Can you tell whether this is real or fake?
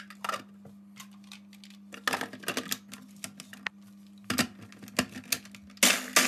real